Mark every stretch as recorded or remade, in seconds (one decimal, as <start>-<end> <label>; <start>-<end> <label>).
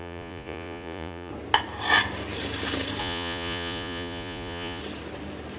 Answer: 0.0-1.3 remade; 1.3-3.0 recorded; 3.0-4.8 remade; 4.8-5.6 recorded